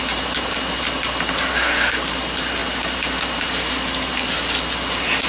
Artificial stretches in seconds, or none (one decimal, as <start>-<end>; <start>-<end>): 1.5-2.1